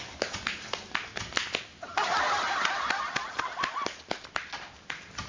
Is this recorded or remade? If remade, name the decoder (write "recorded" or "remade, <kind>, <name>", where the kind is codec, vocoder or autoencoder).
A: recorded